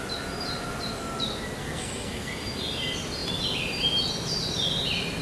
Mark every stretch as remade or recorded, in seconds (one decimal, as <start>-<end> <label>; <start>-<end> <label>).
0.0-1.6 recorded; 1.6-2.3 remade; 2.3-5.2 recorded